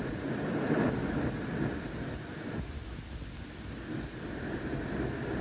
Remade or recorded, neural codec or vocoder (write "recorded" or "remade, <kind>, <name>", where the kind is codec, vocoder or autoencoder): recorded